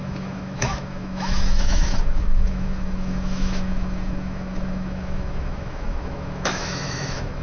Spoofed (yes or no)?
yes